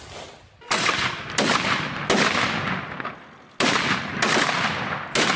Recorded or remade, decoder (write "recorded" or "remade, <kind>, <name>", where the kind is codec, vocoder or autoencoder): recorded